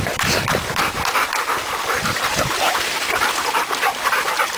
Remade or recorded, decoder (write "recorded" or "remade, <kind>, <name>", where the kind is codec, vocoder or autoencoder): remade, vocoder, BigVGAN v2